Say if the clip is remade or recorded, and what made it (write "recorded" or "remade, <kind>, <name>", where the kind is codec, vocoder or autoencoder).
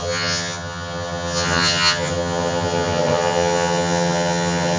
remade, vocoder, HiFi-GAN